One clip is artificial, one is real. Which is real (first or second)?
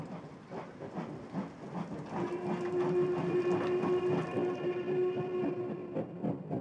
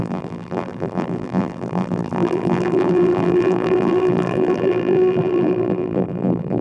first